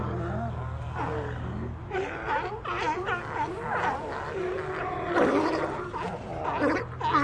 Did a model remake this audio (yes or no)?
no